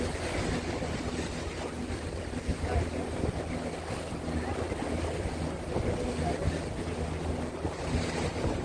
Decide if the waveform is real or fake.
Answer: real